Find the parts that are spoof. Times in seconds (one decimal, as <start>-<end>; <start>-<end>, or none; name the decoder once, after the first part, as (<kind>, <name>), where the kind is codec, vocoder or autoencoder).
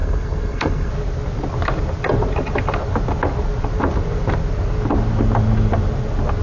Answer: 0.0-0.9 (codec, SNAC)